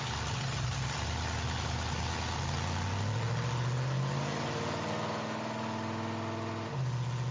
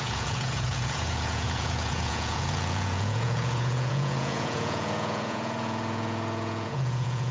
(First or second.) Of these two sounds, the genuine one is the first